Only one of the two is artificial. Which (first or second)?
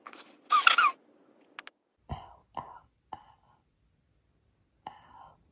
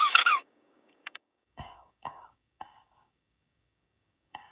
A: second